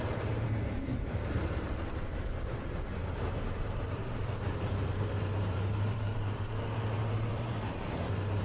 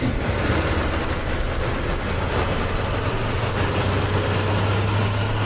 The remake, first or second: first